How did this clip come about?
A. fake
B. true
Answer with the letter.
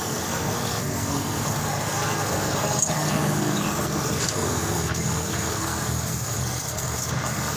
A